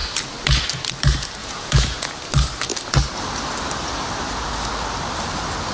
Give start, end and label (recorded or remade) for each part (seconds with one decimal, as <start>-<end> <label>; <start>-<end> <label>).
0.0-1.4 recorded; 1.4-2.1 remade; 2.1-5.7 recorded